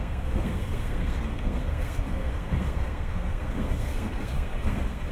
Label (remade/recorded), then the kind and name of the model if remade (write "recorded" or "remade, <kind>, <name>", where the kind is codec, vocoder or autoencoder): remade, codec, SNAC